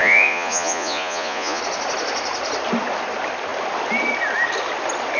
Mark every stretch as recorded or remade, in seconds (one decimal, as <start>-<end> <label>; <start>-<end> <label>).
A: 0.0-1.6 remade; 1.6-5.2 recorded